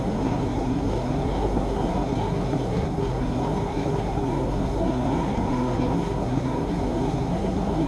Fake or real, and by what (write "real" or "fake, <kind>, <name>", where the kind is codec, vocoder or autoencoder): fake, codec, SNAC